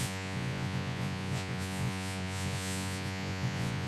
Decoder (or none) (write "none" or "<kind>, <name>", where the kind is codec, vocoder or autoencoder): vocoder, Vocos